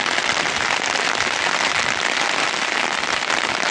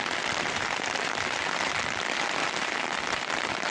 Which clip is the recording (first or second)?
first